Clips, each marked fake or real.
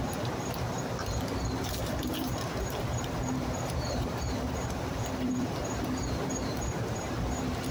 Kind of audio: fake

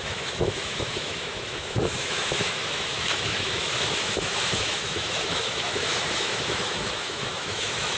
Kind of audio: fake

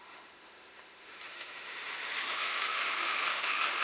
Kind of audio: fake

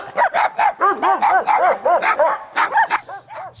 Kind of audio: real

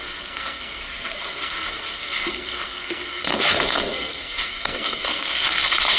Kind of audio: fake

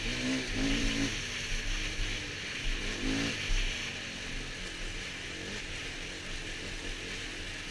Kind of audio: real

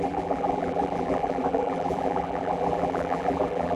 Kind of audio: fake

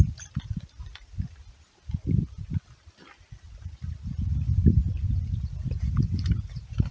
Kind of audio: real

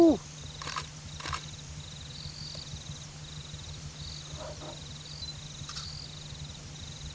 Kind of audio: real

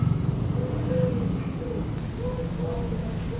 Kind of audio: real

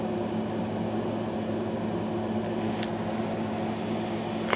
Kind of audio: real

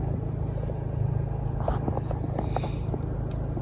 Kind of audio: real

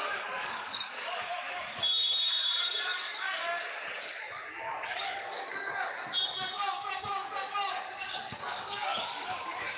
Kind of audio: fake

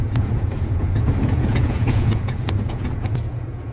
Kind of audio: fake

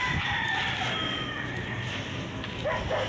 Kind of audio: real